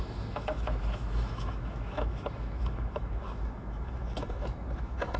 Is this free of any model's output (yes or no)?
no